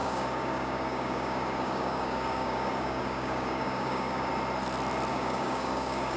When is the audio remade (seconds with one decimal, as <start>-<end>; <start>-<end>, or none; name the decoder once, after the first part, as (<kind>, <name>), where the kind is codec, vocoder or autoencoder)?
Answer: 0.0-4.3 (codec, DAC); 5.1-6.2